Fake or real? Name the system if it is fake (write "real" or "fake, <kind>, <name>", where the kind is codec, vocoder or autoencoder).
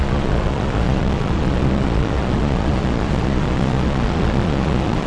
fake, vocoder, Vocos